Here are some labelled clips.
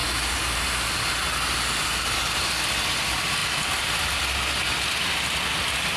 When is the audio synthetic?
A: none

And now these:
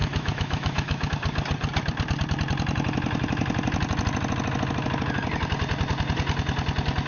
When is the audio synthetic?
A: 0.0-1.1 (autoencoder, DAC-VAE)

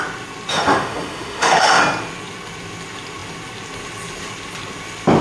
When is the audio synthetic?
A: 0.5-1.8 (autoencoder, DAC-VAE)

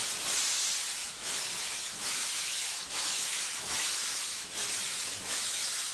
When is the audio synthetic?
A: 1.0-3.9 (autoencoder, DAC-VAE); 4.3-5.9

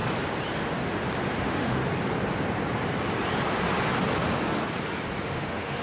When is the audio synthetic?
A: 1.4-1.8 (autoencoder, DAC-VAE); 5.3-5.8